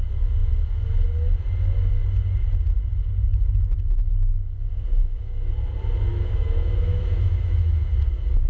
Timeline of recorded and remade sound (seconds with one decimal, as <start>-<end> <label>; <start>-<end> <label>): 0.0-5.0 recorded; 5.0-5.5 remade; 5.5-6.1 recorded; 6.1-7.9 remade; 7.9-8.5 recorded